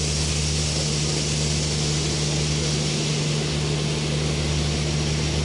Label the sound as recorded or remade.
recorded